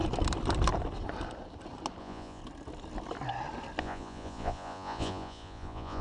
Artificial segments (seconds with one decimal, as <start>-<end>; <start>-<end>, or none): 2.0-2.4; 3.8-6.0